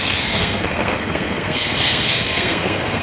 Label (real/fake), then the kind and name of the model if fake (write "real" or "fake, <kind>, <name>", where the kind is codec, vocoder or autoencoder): fake, codec, SNAC